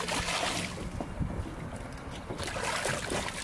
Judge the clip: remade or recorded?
recorded